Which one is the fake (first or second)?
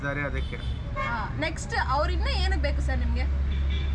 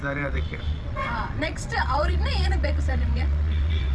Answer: second